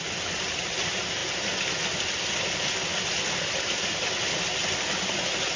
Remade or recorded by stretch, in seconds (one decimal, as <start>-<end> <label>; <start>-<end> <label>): 0.0-5.6 recorded